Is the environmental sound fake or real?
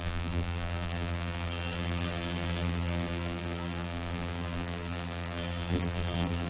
fake